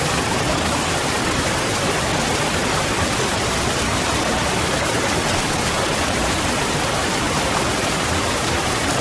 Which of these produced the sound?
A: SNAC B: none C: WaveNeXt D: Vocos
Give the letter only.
B